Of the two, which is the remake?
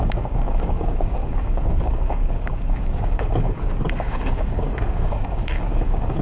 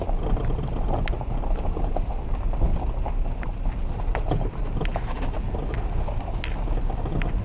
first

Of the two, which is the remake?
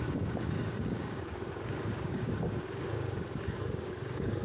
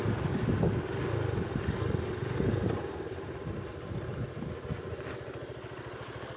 first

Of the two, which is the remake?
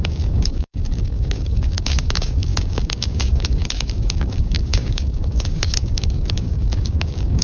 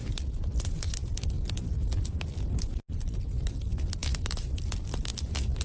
first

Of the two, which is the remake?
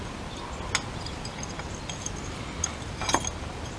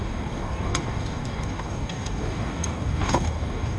second